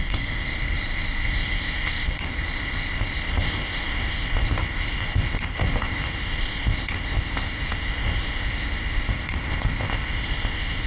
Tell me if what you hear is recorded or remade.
remade